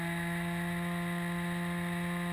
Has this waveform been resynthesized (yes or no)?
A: no